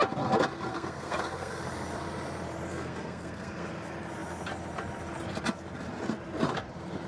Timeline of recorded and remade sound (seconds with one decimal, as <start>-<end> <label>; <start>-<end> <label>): 0.0-0.7 recorded; 0.7-1.6 remade; 1.6-2.7 recorded; 2.7-3.7 remade; 3.7-7.1 recorded